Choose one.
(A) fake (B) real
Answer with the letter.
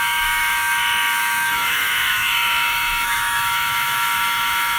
A